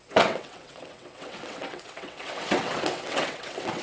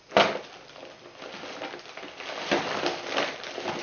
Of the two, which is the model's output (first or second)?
first